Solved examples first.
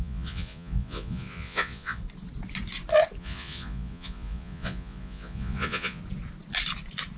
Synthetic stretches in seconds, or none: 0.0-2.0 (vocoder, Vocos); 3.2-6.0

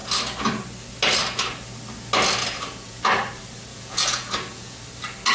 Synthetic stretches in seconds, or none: 2.4-3.0 (vocoder, Vocos); 3.7-4.8

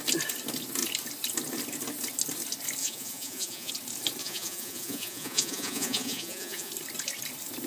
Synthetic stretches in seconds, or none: 2.8-3.7 (vocoder, Vocos); 4.2-6.7

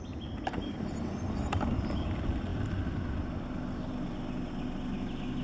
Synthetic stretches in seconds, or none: none

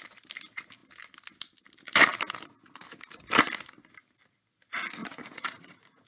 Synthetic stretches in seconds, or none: 5.0-6.1 (vocoder, Vocos)